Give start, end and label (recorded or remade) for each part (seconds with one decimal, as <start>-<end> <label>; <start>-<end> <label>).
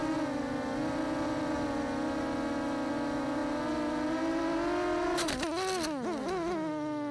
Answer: 0.0-7.1 recorded